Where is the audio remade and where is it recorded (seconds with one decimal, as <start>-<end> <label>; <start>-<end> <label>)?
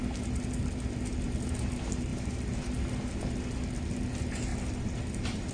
0.0-2.1 recorded; 2.1-2.7 remade; 2.7-4.5 recorded; 4.5-5.5 remade